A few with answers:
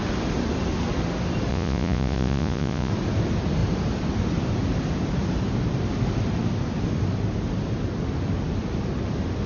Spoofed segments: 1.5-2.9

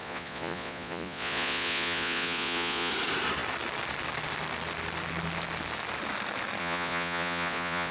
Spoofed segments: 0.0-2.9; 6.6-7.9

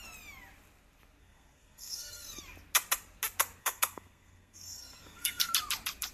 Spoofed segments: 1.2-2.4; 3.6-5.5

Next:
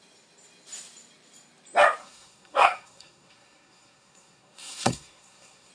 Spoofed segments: 2.0-5.7

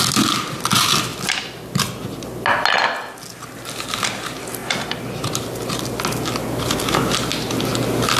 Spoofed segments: none

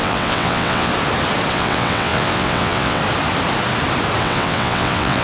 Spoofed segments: 0.0-0.9; 1.5-3.0; 4.2-5.2

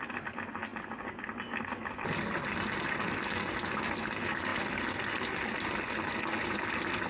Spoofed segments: none